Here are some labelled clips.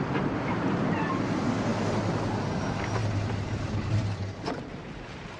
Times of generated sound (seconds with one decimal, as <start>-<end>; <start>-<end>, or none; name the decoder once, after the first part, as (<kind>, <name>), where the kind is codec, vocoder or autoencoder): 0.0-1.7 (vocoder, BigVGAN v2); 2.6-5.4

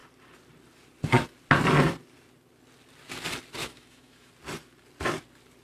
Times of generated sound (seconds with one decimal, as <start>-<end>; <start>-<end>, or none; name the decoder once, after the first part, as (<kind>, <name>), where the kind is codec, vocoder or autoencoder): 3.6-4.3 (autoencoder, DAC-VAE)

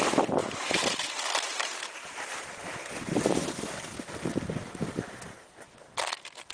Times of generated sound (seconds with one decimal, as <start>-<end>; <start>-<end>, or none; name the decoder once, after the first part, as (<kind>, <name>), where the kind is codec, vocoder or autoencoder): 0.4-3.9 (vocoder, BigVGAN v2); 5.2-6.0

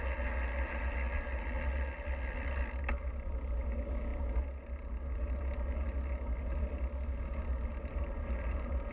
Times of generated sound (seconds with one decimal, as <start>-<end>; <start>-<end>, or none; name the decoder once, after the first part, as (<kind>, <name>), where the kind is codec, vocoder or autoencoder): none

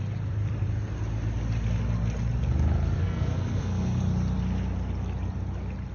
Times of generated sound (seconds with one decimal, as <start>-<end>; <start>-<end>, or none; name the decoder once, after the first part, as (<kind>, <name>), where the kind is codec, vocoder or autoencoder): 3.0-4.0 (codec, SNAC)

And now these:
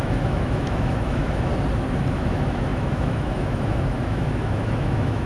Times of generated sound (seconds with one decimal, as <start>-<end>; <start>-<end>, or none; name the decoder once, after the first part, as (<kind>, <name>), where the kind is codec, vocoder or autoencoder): 0.0-1.5 (autoencoder, DAC-VAE); 2.1-5.3

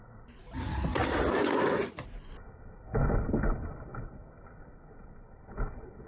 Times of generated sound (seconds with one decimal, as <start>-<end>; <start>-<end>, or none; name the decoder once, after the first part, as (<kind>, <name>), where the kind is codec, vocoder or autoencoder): none

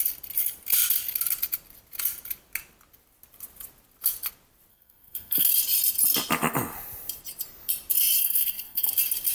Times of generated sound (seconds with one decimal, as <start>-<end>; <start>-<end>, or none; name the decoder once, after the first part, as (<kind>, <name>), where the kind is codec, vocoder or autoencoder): 4.7-5.5 (codec, SNAC); 8.2-8.9